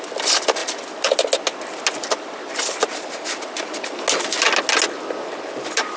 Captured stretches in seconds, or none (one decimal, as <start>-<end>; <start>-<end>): 0.0-6.0